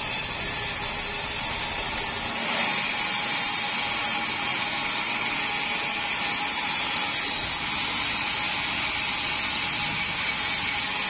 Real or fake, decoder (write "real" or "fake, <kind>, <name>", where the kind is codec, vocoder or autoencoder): real